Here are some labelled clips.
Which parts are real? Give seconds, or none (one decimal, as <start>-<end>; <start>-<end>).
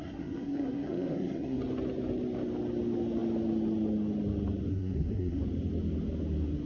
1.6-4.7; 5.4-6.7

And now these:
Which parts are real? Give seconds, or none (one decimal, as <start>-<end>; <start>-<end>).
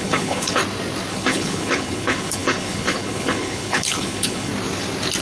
0.6-1.1; 4.5-5.2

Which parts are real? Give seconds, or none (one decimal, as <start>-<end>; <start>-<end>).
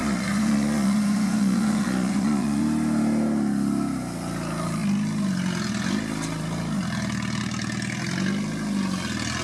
2.6-9.4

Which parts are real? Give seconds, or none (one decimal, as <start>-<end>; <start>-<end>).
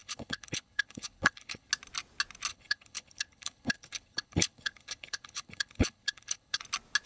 1.7-2.5; 6.6-7.1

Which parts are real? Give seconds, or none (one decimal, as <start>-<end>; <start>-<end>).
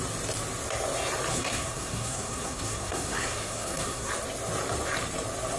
0.0-1.3; 4.1-5.6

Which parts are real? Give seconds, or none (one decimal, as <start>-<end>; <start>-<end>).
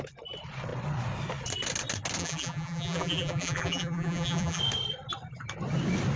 0.0-2.2; 4.6-6.2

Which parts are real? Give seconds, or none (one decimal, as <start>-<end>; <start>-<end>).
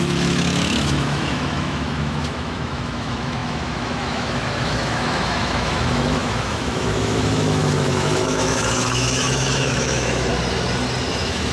10.3-11.1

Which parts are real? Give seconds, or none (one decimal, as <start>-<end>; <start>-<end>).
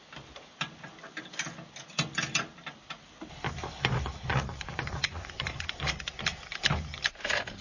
0.0-4.3; 6.1-7.6